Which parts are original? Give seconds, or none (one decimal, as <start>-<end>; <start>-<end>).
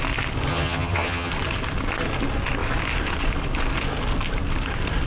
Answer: 0.0-0.5; 1.3-5.1